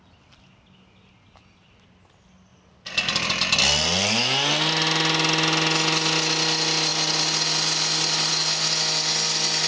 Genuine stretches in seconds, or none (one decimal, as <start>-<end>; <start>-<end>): 0.0-9.7

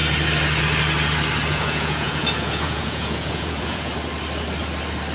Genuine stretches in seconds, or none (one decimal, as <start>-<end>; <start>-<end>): 0.0-1.5; 3.9-5.1

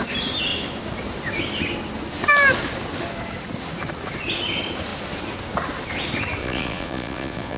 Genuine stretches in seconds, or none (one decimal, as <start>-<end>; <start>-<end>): 0.0-6.4

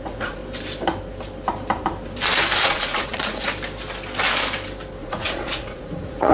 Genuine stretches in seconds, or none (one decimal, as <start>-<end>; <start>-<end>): 0.4-2.6; 3.5-5.0

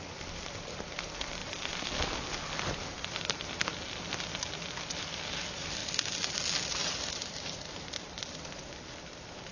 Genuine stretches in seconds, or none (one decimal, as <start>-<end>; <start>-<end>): 0.0-9.5

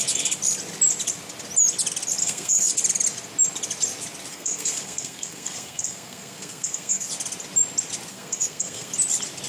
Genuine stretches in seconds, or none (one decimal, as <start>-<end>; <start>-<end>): 0.0-2.2; 2.7-4.3; 7.1-8.1; 8.9-9.5

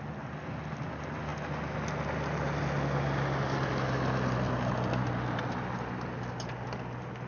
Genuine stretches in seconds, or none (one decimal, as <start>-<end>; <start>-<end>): 0.0-7.3